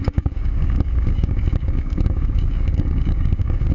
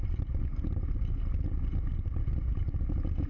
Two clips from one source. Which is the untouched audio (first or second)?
second